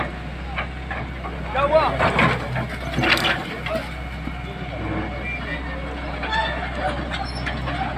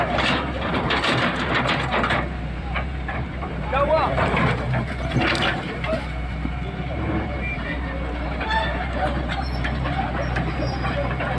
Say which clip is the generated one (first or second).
second